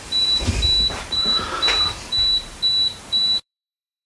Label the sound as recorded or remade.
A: remade